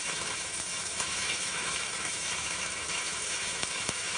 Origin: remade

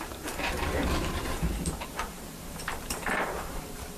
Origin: remade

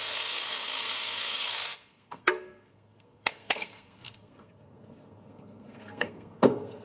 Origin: remade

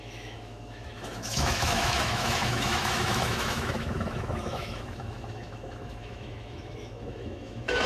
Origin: remade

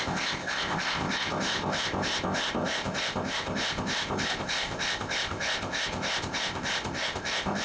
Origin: remade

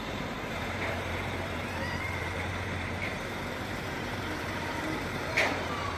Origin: remade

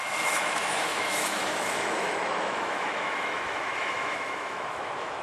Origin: remade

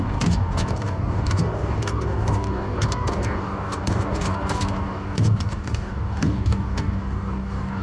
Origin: remade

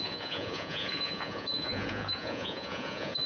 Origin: remade